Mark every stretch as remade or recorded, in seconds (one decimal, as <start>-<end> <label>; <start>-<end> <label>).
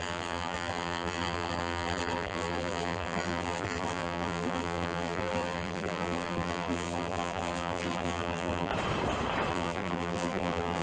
0.0-8.7 remade; 8.7-9.5 recorded; 9.5-10.8 remade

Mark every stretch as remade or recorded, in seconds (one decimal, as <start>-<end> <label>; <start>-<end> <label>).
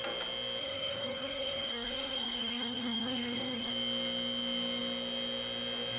0.0-0.6 recorded; 0.6-3.7 remade; 3.7-6.0 recorded